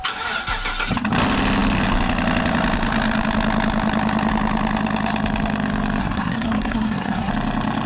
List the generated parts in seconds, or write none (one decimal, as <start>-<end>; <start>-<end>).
6.0-7.3